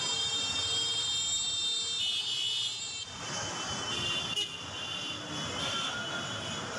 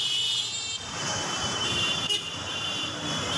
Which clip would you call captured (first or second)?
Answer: first